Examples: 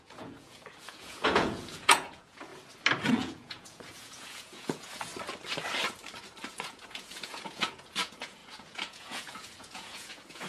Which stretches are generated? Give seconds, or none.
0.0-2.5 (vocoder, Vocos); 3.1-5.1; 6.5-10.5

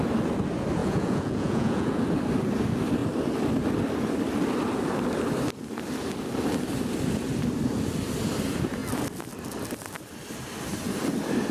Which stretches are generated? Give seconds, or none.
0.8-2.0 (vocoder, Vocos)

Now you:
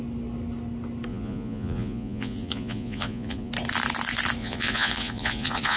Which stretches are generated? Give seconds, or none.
1.1-3.5 (vocoder, Vocos); 4.4-5.8

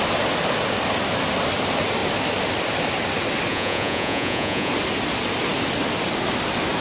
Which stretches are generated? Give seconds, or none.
3.5-4.7 (vocoder, Vocos)